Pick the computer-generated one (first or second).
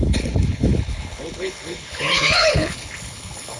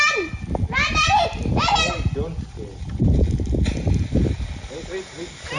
first